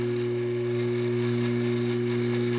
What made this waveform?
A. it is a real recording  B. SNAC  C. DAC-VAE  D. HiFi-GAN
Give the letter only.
A